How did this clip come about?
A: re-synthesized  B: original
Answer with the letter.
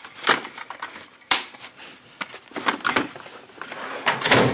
B